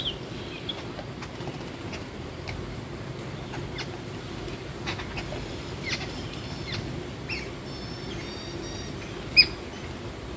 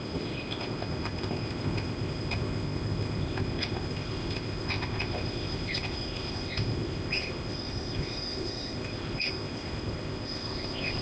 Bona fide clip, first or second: first